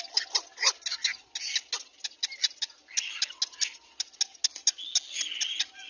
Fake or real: real